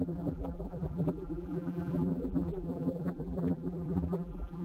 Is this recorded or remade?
remade